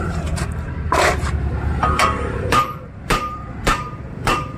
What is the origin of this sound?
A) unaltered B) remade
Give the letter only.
B